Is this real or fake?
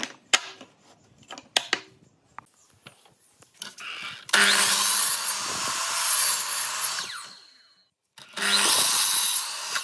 real